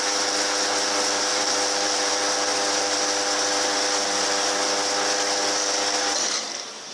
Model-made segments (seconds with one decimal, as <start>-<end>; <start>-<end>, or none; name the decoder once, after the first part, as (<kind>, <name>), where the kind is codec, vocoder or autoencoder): 1.3-2.1 (vocoder, BigVGAN v2)